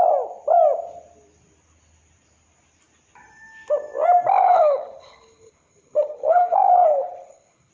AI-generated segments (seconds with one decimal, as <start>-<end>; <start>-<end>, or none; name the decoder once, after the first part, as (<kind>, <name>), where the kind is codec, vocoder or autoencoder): 4.4-7.7 (codec, HILCodec)